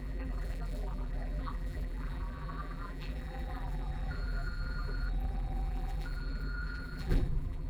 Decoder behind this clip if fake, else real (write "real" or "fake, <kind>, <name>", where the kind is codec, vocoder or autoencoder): fake, vocoder, BigVGAN v2